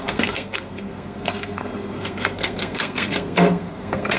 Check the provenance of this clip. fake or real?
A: fake